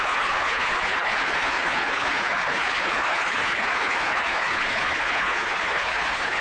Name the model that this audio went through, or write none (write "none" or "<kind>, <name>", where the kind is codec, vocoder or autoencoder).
codec, HILCodec